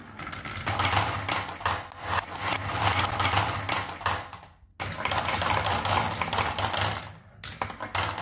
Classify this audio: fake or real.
real